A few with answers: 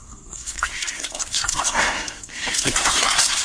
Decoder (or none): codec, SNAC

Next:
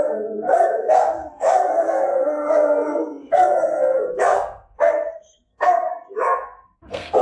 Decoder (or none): codec, SNAC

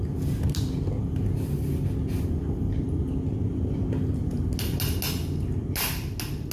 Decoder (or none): none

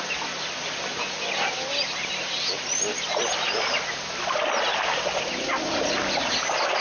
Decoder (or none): none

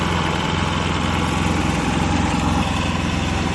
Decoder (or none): none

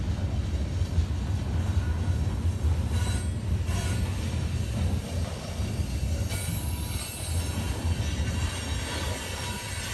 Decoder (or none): none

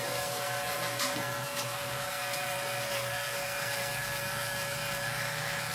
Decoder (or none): codec, SNAC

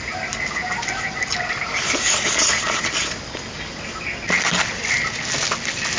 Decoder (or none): none